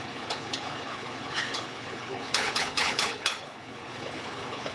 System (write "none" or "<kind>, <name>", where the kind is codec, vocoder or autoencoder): codec, HILCodec